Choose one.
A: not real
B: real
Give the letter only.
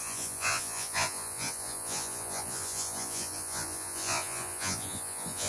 A